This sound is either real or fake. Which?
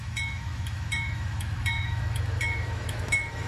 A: fake